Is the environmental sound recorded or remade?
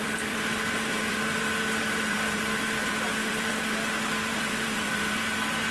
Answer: remade